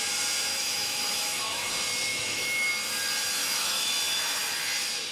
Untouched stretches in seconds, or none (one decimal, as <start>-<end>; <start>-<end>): 0.0-0.5; 1.7-2.1; 2.7-3.4; 3.9-5.1